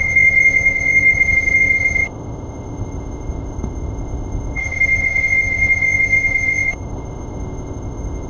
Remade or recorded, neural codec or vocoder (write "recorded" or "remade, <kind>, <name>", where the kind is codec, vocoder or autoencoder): remade, codec, ZipCodec